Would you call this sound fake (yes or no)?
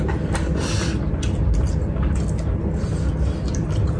no